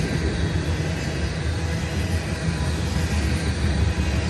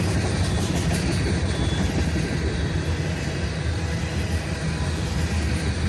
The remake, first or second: second